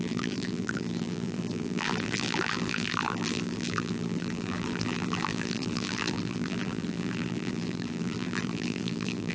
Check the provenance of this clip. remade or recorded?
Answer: remade